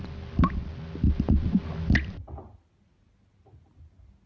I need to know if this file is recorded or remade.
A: recorded